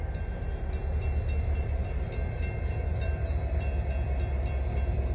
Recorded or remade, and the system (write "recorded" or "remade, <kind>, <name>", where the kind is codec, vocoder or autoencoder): recorded